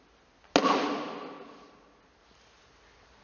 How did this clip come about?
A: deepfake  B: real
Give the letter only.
B